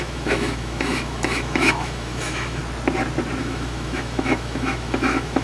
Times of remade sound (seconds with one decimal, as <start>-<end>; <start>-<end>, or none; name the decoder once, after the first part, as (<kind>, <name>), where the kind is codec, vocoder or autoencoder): 0.0-2.6 (autoencoder, DAC-VAE); 3.4-5.4